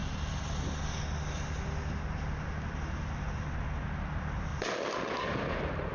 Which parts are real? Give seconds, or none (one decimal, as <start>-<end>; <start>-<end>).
0.0-5.9